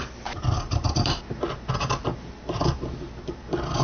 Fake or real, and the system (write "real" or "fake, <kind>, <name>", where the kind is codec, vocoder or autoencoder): real